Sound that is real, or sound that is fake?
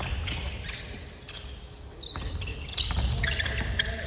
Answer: real